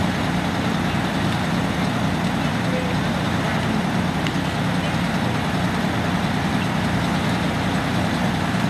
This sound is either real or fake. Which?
real